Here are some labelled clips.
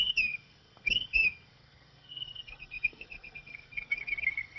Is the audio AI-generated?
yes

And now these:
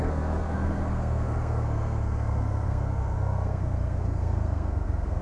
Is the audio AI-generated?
yes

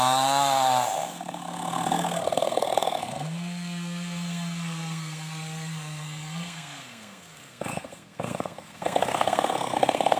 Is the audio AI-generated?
yes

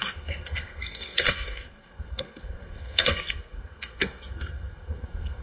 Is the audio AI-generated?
yes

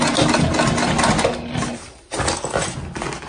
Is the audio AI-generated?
no